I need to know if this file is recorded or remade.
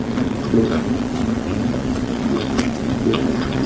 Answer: remade